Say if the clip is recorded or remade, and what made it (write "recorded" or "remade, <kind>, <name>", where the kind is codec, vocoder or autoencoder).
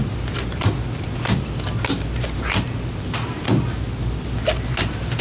recorded